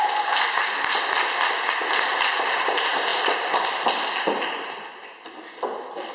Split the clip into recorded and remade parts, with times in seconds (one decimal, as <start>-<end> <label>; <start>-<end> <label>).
0.0-6.1 recorded